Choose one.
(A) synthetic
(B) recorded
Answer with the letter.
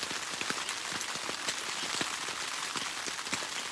B